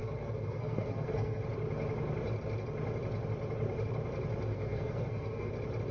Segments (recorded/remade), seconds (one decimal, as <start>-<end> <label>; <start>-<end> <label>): 0.0-1.4 remade; 1.4-4.5 recorded; 4.5-5.5 remade; 5.5-5.9 recorded